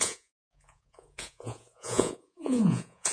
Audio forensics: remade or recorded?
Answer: remade